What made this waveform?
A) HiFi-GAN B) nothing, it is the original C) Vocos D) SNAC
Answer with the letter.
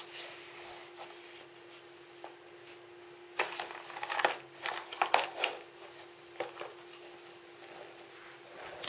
B